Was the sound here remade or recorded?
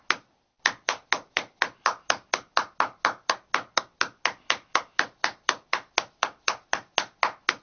recorded